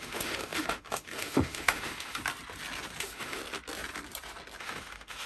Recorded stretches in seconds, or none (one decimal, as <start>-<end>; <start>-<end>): 2.2-3.0; 3.4-4.6